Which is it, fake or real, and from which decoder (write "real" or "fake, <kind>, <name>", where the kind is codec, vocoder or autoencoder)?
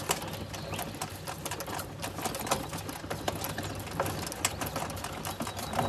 real